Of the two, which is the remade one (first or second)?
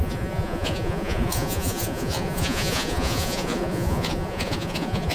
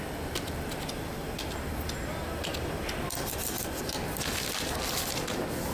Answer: first